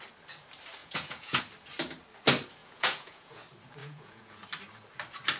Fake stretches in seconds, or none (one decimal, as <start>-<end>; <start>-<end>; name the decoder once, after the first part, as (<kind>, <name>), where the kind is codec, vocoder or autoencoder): 0.8-1.4 (vocoder, Vocos); 2.6-3.4; 3.8-4.4